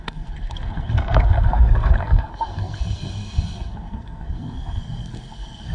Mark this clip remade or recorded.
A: remade